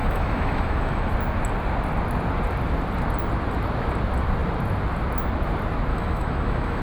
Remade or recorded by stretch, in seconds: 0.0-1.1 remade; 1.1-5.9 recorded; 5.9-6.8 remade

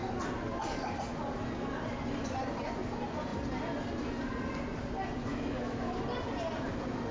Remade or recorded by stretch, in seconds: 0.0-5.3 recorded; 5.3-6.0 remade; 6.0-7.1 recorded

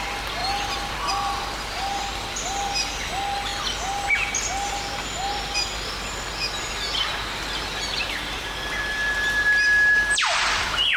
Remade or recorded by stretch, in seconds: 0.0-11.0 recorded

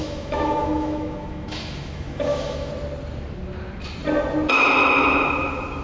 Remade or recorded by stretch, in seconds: 0.0-2.7 remade; 2.7-5.8 recorded

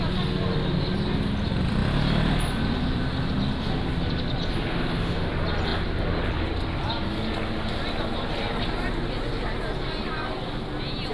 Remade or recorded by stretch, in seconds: 0.0-4.7 recorded; 4.7-5.3 remade; 5.3-11.1 recorded

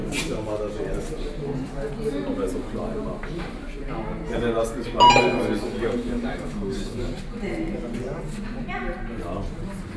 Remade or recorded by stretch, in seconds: 0.0-5.7 recorded; 5.7-7.1 remade; 7.1-10.0 recorded

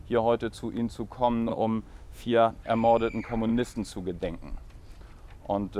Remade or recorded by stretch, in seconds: 0.0-1.5 recorded; 1.5-2.5 remade; 2.5-5.8 recorded

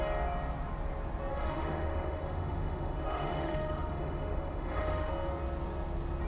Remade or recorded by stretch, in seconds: 0.0-1.3 recorded; 1.3-5.1 remade; 5.1-6.3 recorded